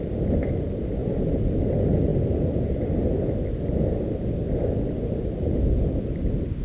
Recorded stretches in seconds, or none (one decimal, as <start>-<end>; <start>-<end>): 0.0-6.6